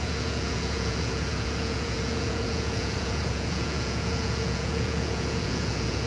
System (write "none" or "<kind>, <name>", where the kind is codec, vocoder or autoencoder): vocoder, Vocos